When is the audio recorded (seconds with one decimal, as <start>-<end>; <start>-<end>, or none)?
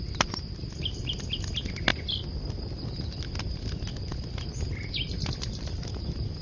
0.0-6.4